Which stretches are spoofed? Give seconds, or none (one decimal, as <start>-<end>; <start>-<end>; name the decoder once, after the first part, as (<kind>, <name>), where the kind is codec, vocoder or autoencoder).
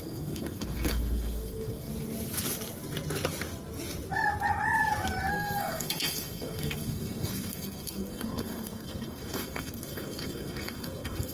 0.0-1.9 (codec, SNAC); 5.3-11.3